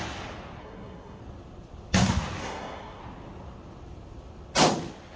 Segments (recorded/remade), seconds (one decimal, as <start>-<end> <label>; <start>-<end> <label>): 0.0-0.6 recorded; 0.6-1.2 remade; 1.2-2.4 recorded; 2.4-3.0 remade; 3.0-5.2 recorded